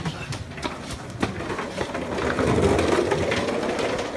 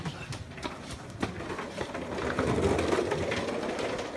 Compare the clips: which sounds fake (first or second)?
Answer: second